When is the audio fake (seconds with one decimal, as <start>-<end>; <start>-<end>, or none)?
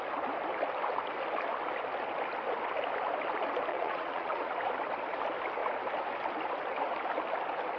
3.7-4.5